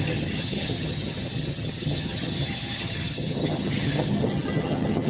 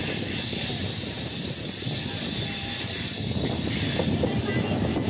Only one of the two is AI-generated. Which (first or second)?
first